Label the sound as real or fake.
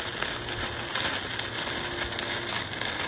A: real